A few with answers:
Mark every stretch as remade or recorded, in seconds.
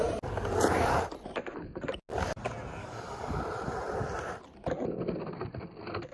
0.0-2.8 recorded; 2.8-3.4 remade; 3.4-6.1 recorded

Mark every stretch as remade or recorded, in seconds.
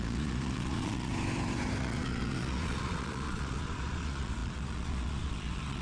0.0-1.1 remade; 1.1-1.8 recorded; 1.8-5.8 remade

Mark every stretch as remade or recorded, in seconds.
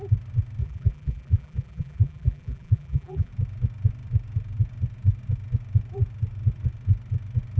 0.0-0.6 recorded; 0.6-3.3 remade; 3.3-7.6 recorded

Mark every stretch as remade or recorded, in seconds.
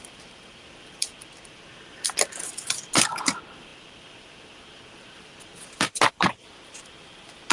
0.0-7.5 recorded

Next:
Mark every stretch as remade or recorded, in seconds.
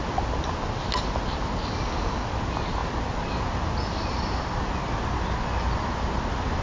0.0-6.6 recorded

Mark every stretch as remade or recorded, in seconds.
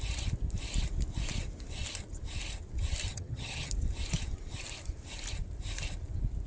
0.0-3.1 recorded; 3.1-3.7 remade; 3.7-6.5 recorded